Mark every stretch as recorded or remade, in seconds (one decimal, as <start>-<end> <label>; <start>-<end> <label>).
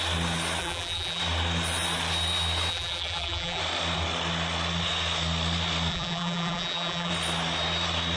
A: 0.0-0.6 recorded; 0.6-1.2 remade; 1.2-2.7 recorded; 2.7-3.6 remade; 3.6-5.9 recorded; 5.9-7.1 remade; 7.1-8.2 recorded